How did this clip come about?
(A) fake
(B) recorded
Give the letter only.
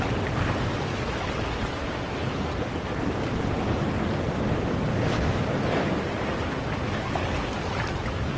B